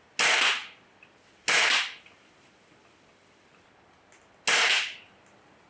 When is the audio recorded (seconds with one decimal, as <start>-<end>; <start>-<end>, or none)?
0.0-5.7